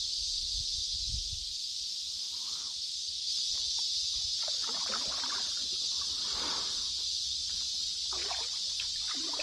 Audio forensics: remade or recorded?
recorded